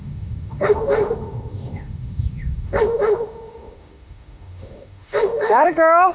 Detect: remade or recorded remade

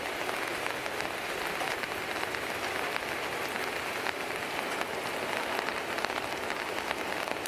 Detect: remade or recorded recorded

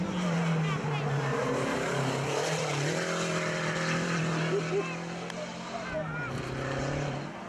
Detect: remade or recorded recorded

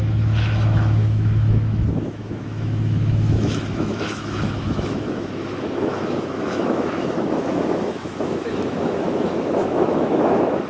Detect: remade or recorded remade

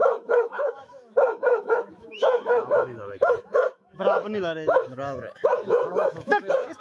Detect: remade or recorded remade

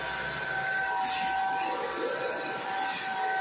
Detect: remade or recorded recorded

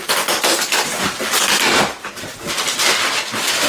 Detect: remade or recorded recorded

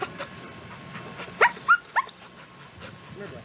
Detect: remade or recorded recorded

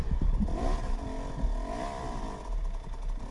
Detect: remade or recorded recorded